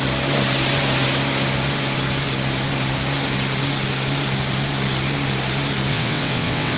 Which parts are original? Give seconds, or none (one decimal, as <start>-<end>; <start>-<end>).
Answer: 0.0-5.9